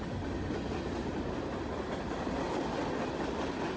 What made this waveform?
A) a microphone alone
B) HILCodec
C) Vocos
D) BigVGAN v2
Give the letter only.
A